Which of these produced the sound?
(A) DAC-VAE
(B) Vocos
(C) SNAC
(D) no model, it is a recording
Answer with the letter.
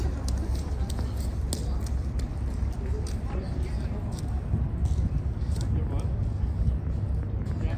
D